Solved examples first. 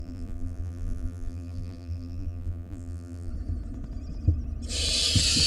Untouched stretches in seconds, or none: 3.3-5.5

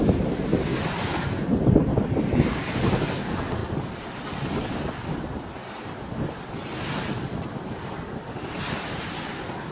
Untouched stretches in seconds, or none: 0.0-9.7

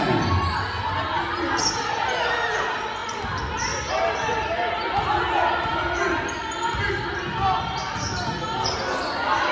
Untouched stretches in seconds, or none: 0.0-9.5